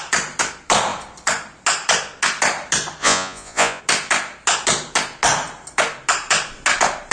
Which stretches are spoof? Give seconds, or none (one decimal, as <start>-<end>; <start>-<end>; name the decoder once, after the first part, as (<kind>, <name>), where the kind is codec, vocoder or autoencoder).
3.0-3.8 (vocoder, Vocos)